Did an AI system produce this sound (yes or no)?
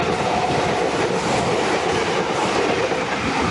no